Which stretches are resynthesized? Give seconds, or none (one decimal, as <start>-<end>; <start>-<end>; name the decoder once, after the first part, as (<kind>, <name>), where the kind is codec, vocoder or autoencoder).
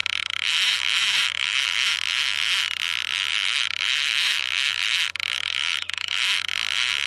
0.0-1.9 (autoencoder, DAC-VAE); 3.3-6.5